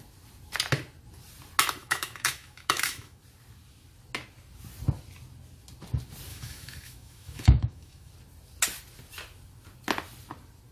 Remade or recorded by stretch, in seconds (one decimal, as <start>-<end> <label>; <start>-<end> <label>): 0.0-1.8 recorded; 1.8-3.2 remade; 3.2-6.3 recorded; 6.3-8.1 remade; 8.1-10.7 recorded